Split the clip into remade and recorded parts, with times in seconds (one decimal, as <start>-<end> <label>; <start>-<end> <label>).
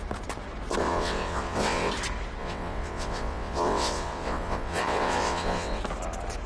0.0-0.8 recorded; 0.8-1.9 remade; 1.9-2.4 recorded; 2.4-5.8 remade; 5.8-6.5 recorded